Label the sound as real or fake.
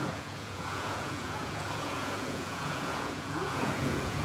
fake